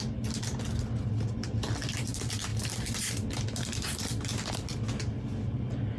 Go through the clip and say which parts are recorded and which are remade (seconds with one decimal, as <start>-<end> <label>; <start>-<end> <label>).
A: 0.0-6.0 recorded